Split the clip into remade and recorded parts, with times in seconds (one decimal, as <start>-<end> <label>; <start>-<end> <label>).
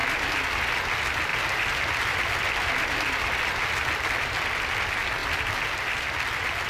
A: 0.0-0.6 remade; 0.6-1.3 recorded; 1.3-4.7 remade; 4.7-5.2 recorded; 5.2-6.0 remade; 6.0-6.7 recorded